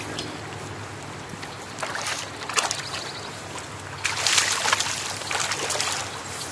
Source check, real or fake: real